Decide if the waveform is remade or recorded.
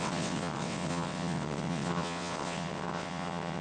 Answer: remade